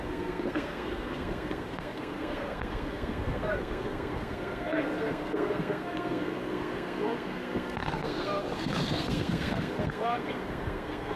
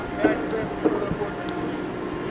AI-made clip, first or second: first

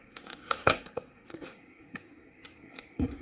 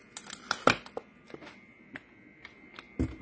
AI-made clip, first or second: first